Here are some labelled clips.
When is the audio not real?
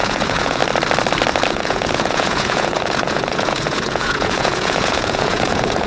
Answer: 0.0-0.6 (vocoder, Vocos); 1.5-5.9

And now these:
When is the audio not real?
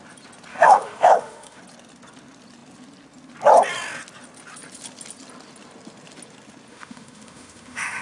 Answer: 0.5-1.6 (autoencoder, DAC-VAE); 6.7-8.0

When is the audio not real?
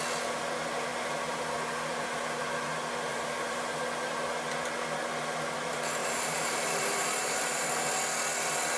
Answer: 3.1-3.8 (vocoder, BigVGAN v2); 6.0-7.7